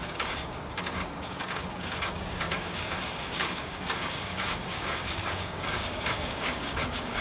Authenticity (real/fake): fake